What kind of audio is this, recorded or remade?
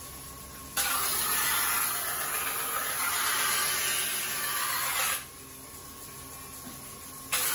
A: recorded